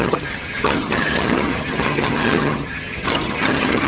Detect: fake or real fake